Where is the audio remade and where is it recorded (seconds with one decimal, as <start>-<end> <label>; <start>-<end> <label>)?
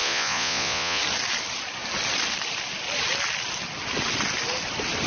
0.0-1.0 remade; 1.0-5.1 recorded